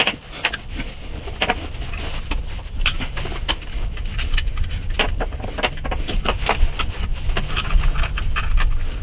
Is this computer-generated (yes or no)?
no